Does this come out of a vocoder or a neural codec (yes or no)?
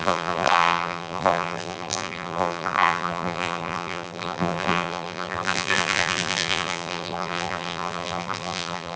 yes